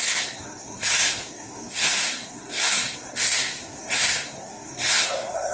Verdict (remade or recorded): remade